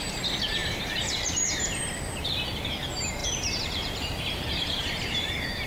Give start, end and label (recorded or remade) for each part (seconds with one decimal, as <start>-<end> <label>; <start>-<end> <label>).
0.0-0.6 recorded; 0.6-1.8 remade; 1.8-3.2 recorded; 3.2-4.5 remade; 4.5-5.7 recorded